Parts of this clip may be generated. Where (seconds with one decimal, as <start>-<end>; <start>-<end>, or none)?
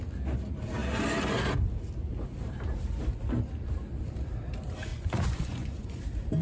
4.9-6.0